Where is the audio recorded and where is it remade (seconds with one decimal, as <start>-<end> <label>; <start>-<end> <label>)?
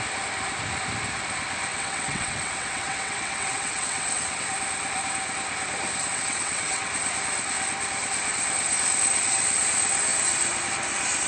0.0-1.7 recorded; 1.7-4.4 remade; 4.4-6.1 recorded; 6.1-6.9 remade; 6.9-11.3 recorded